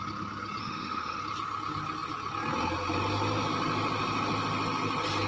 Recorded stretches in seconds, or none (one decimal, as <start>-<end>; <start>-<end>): 0.0-0.6; 1.2-5.3